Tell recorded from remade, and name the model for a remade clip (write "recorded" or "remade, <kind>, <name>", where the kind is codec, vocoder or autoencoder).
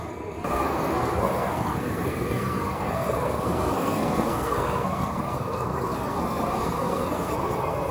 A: remade, codec, SNAC